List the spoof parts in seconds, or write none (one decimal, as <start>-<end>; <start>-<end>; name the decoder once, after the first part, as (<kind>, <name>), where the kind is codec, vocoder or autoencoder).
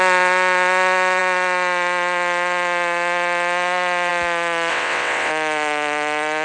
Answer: 4.7-5.3 (vocoder, WaveNeXt)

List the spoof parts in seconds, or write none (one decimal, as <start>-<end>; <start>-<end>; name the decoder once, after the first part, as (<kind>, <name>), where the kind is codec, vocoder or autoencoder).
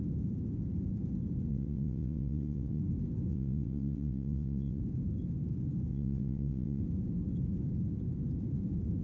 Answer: 1.5-2.8 (vocoder, WaveNeXt); 3.3-4.8; 5.9-6.8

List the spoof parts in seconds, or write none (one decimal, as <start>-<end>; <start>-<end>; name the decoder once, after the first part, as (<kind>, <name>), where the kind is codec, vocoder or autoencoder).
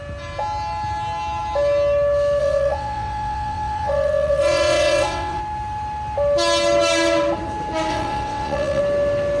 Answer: 2.4-5.4 (vocoder, WaveNeXt); 7.9-8.8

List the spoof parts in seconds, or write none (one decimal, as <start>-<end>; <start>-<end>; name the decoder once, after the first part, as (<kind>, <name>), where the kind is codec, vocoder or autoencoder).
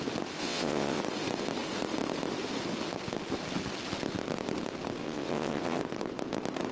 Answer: 0.4-1.0 (vocoder, WaveNeXt); 5.0-5.8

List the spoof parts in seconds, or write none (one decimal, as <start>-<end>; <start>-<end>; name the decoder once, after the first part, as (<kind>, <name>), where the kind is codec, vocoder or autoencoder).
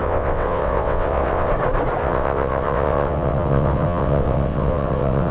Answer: 0.0-1.5 (vocoder, WaveNeXt); 2.0-5.3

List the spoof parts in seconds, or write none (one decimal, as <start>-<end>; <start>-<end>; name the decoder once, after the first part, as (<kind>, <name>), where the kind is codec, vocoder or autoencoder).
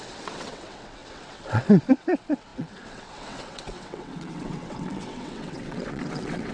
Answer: 0.0-6.5 (vocoder, WaveNeXt)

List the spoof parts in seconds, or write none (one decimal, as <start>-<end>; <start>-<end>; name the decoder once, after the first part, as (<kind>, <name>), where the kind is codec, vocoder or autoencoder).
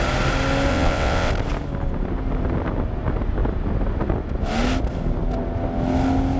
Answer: 0.7-1.3 (vocoder, WaveNeXt)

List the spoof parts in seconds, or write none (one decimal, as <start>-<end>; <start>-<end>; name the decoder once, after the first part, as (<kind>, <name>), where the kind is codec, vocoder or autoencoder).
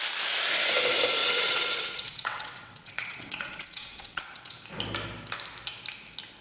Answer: 1.2-4.5 (vocoder, WaveNeXt)